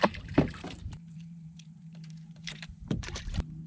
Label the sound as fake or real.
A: fake